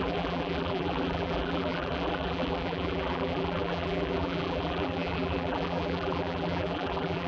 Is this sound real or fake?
fake